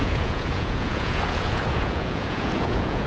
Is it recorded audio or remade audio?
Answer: remade